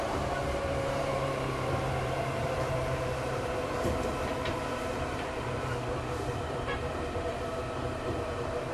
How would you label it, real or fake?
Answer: fake